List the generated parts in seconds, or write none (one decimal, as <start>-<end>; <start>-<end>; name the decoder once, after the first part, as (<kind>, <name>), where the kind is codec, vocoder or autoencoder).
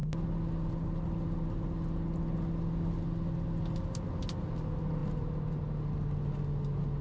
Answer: none